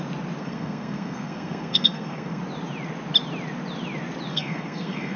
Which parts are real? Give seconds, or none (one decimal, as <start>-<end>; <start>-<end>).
0.0-0.4; 2.4-4.3

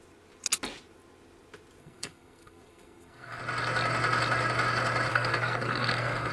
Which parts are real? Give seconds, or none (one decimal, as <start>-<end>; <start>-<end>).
0.0-1.8; 3.4-5.1

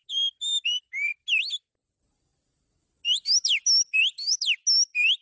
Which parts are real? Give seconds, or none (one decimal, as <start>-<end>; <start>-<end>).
0.0-5.2

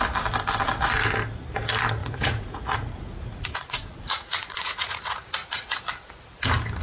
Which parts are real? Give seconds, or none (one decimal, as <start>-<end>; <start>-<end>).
0.0-2.0; 5.8-6.8

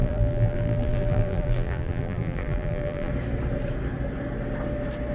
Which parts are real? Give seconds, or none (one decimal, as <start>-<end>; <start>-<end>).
3.1-5.1

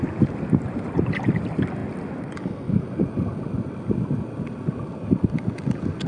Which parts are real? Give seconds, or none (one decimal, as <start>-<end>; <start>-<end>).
0.0-6.1